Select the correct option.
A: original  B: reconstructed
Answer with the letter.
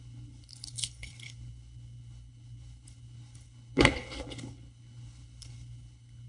B